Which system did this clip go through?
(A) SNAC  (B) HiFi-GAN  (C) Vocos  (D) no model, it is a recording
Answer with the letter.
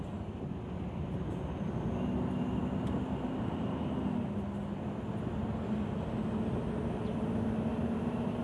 D